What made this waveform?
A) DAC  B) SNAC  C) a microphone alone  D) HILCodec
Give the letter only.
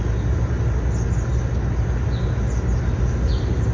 C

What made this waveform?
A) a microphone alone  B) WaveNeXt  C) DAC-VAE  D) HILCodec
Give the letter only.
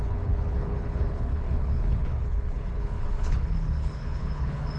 D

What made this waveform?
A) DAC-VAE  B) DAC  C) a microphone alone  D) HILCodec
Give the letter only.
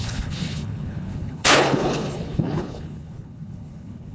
D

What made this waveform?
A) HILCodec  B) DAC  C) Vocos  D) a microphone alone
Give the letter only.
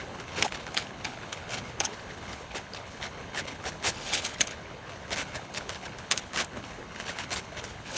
A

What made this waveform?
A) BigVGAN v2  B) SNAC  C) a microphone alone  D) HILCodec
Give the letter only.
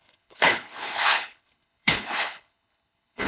D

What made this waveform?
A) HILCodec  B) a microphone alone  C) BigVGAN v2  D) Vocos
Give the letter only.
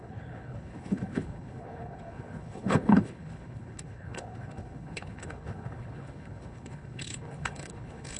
A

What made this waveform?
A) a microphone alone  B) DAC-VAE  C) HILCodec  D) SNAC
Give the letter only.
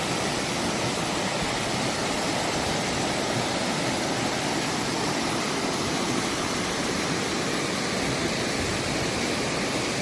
A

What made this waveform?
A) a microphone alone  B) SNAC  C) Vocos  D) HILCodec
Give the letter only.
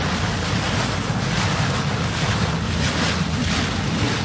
A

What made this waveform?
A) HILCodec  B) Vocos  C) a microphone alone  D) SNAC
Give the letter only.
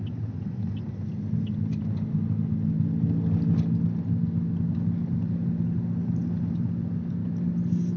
C